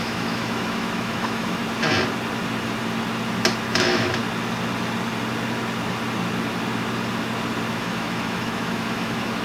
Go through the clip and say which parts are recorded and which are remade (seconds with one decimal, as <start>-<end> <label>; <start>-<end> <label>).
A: 0.0-1.6 remade; 1.6-3.7 recorded; 3.7-4.2 remade; 4.2-7.7 recorded; 7.7-9.4 remade